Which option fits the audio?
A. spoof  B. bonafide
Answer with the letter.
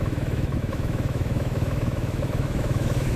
A